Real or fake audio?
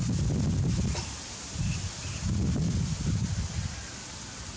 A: real